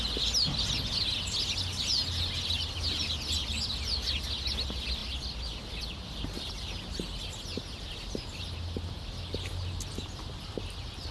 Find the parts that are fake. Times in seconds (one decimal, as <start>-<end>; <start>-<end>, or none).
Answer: none

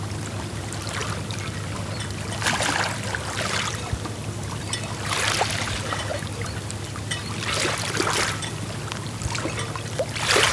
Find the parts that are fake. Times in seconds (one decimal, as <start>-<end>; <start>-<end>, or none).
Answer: none

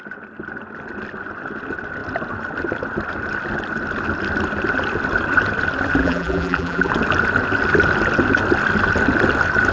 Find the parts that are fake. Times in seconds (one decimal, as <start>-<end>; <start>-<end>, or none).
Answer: 6.0-6.9